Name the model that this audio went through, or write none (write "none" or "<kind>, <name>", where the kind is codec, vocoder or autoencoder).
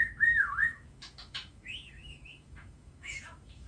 autoencoder, DAC-VAE